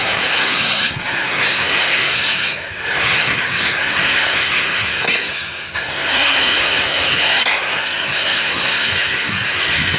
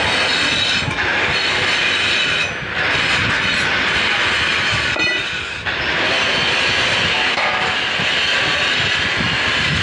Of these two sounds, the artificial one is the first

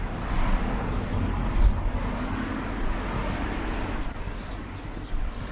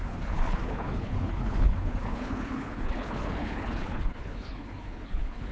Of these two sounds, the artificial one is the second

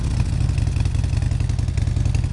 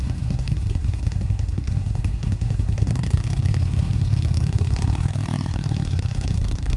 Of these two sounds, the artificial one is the second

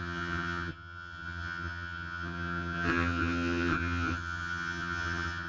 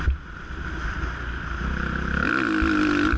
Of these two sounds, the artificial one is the first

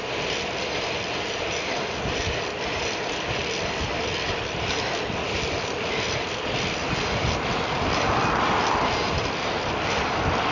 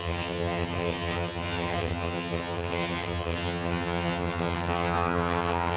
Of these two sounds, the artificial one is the second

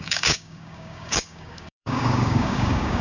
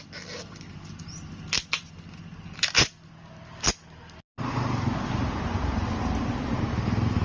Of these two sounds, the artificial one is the first